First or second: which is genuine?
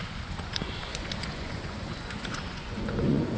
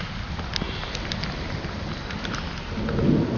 second